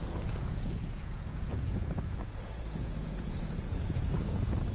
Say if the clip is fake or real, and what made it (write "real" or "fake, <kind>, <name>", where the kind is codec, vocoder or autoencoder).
fake, vocoder, Vocos